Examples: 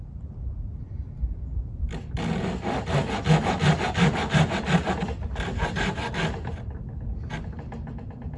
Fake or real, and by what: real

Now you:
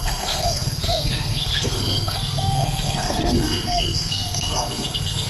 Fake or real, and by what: fake, codec, SNAC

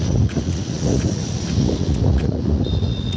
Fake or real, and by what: fake, vocoder, Vocos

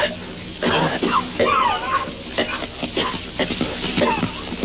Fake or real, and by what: real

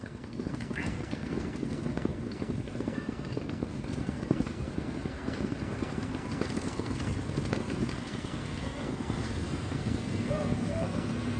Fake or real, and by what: fake, codec, SNAC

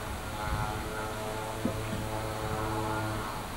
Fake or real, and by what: real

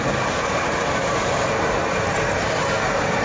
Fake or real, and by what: fake, vocoder, BigVGAN v2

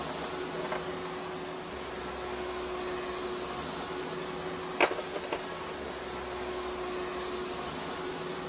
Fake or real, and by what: real